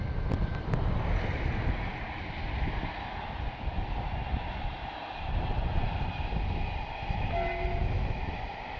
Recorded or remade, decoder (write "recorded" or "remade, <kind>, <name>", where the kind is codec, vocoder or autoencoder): recorded